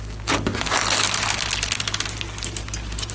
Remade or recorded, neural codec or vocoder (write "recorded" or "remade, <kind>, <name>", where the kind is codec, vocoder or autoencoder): recorded